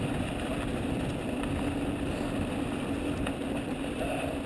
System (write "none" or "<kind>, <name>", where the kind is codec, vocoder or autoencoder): none